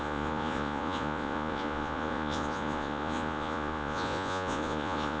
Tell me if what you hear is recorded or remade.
remade